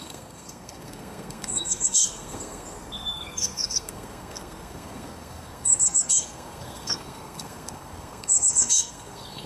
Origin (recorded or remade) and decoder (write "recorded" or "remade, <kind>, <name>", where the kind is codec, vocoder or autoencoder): remade, codec, SNAC